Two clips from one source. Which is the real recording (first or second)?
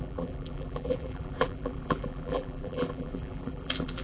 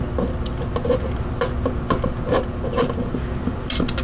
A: second